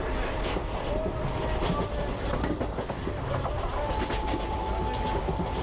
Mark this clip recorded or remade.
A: recorded